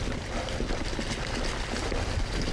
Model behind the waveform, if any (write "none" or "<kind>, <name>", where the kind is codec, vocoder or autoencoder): vocoder, BigVGAN v2